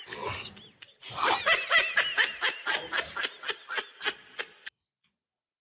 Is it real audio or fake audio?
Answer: real